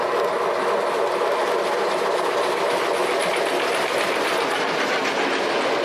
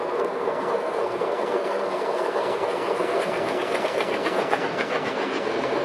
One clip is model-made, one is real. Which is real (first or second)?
first